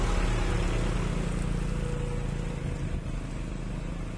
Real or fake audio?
real